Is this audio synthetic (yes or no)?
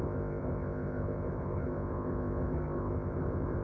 yes